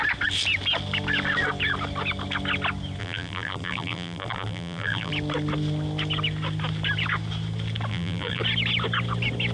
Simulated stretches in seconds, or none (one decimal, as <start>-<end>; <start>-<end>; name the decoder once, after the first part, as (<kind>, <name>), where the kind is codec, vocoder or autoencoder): 3.0-5.1 (vocoder, BigVGAN v2); 7.9-8.4